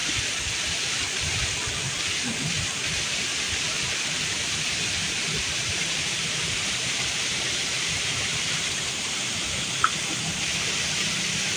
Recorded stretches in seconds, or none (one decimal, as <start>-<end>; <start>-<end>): 0.0-5.0; 9.7-11.6